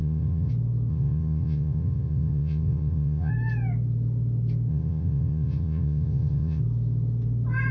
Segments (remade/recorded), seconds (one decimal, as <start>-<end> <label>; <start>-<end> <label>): 0.0-0.5 remade; 0.5-0.9 recorded; 0.9-3.3 remade; 3.3-4.7 recorded; 4.7-6.6 remade; 6.6-7.7 recorded